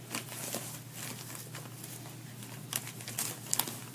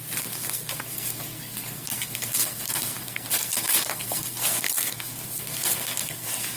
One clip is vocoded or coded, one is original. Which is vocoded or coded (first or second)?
second